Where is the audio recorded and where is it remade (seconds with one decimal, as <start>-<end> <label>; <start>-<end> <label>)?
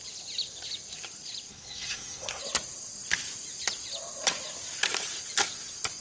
0.0-1.5 recorded; 1.5-2.4 remade; 2.4-6.0 recorded